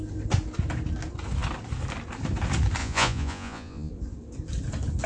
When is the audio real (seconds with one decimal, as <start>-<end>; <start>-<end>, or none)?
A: 0.0-2.8; 3.9-5.1